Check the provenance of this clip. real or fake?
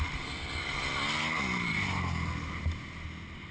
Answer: real